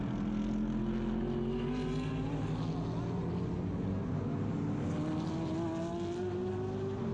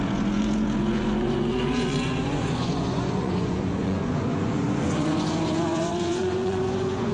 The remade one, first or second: second